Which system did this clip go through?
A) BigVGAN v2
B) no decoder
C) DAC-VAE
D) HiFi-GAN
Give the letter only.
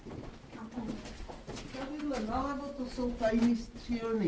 B